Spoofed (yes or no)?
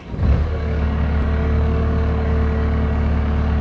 yes